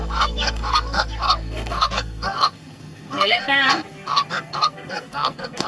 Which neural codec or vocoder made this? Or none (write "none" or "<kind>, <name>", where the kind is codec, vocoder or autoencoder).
codec, SNAC